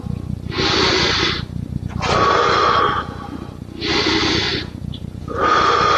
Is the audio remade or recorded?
recorded